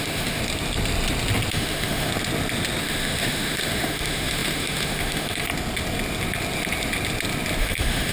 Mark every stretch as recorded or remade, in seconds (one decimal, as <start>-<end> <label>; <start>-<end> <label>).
0.0-0.4 remade; 0.4-1.5 recorded; 1.5-2.1 remade; 2.1-2.8 recorded; 2.8-5.5 remade; 5.5-7.6 recorded; 7.6-8.1 remade